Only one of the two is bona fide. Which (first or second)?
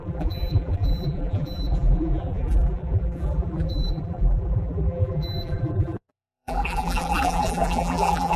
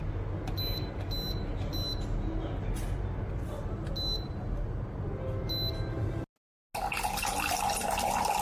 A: second